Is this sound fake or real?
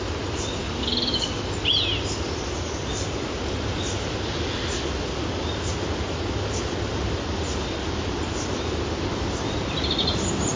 real